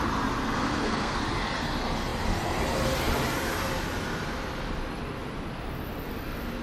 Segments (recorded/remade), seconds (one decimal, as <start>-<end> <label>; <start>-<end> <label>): 0.0-0.4 recorded; 0.4-1.2 remade; 1.2-6.6 recorded